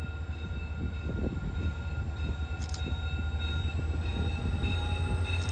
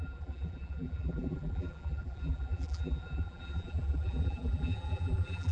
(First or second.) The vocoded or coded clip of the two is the second